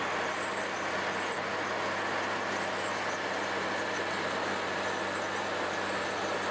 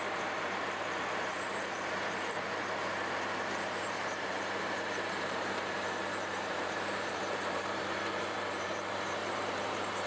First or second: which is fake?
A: second